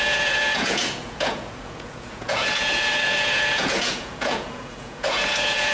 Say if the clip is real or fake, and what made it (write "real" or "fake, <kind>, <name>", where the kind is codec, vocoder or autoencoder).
fake, vocoder, Vocos